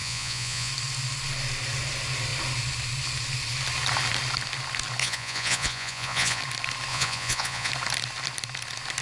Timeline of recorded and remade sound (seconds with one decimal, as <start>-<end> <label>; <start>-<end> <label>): 0.0-0.7 remade; 0.7-5.0 recorded; 5.0-6.4 remade; 6.4-6.9 recorded; 6.9-7.7 remade; 7.7-9.0 recorded